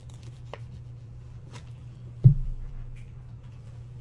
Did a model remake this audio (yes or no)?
yes